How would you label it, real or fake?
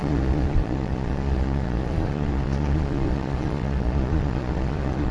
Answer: fake